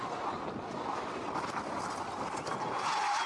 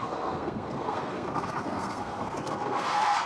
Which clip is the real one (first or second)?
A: first